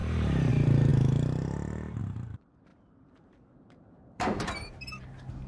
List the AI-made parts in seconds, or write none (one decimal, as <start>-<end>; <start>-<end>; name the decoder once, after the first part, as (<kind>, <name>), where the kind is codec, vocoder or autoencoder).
0.0-5.5 (vocoder, BigVGAN v2)